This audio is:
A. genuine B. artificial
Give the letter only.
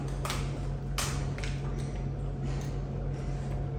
A